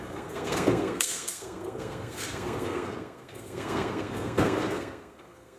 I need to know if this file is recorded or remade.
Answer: remade